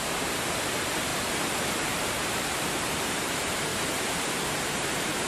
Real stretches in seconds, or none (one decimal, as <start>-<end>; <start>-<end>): 1.1-2.1; 3.7-4.3